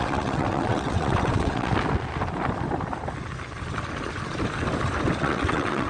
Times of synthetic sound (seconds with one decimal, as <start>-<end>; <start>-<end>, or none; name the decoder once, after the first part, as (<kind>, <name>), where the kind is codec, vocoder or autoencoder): 0.0-1.7 (vocoder, WaveNeXt); 5.2-5.9